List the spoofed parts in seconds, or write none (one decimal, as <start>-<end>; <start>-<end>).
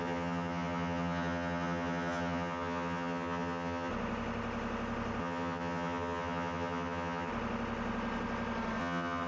0.0-3.9; 5.2-7.3; 8.8-9.3